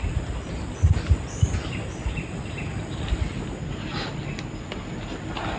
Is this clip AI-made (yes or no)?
no